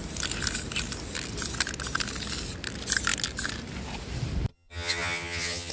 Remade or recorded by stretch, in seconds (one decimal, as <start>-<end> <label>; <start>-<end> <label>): 0.0-4.5 recorded; 4.5-5.7 remade